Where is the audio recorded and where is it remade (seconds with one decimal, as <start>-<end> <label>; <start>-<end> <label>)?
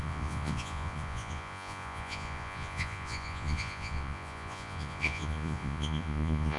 0.0-6.6 remade